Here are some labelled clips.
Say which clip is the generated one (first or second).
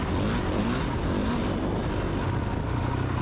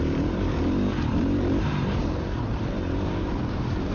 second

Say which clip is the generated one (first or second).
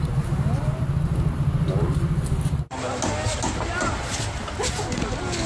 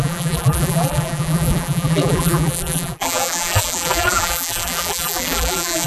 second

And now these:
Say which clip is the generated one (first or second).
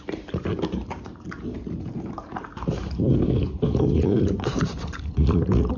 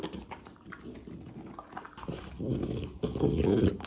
first